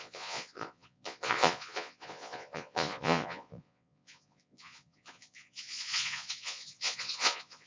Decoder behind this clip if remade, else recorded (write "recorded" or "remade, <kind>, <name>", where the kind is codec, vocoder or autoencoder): remade, vocoder, Vocos